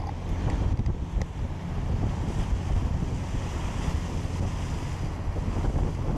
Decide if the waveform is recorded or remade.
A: recorded